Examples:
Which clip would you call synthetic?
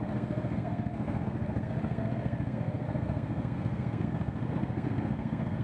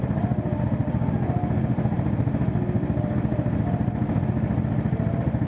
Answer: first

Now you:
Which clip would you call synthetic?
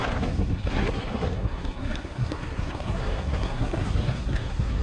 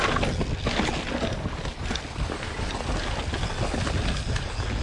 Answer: first